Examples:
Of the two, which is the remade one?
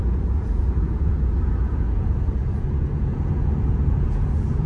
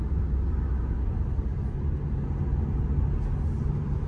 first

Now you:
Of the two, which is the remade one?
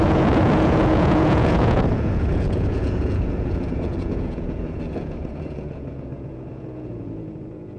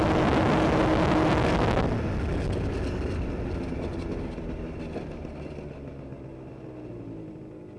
first